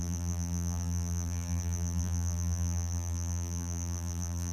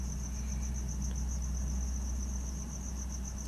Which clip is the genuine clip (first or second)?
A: second